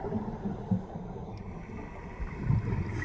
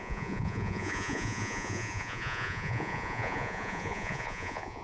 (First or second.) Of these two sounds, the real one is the first